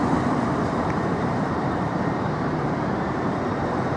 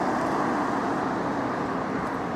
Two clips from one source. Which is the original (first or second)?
second